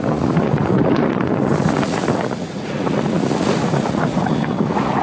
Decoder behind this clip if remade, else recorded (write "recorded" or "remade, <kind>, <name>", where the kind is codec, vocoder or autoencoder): remade, vocoder, Vocos